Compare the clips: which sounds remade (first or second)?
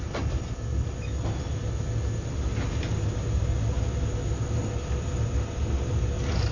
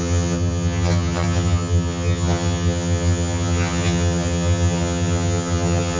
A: second